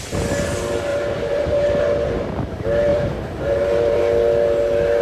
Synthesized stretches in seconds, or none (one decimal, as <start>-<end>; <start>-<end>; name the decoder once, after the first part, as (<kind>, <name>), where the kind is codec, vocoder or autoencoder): 0.9-1.8 (vocoder, BigVGAN v2); 2.9-4.0